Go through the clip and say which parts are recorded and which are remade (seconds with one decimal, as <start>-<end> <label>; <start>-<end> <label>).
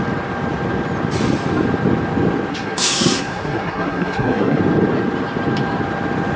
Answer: 0.0-2.5 recorded; 2.5-4.6 remade; 4.6-6.4 recorded